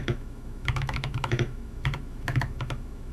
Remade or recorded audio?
remade